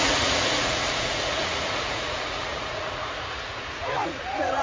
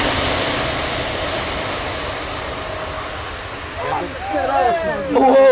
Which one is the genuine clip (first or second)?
second